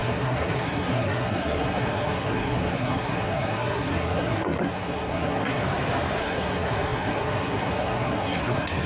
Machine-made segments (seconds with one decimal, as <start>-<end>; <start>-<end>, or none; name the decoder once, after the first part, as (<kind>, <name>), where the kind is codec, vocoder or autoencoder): 0.0-5.6 (codec, SNAC); 6.2-8.9